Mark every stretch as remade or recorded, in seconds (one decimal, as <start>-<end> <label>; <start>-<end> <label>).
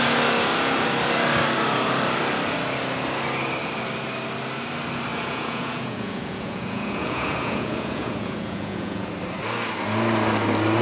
0.0-5.1 recorded; 5.1-9.1 remade; 9.1-10.8 recorded